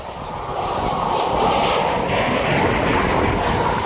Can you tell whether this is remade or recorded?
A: recorded